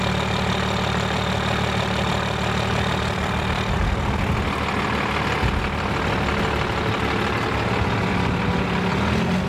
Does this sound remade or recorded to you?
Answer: recorded